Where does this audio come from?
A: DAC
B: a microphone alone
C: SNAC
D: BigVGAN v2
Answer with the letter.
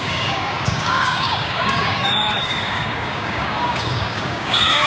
A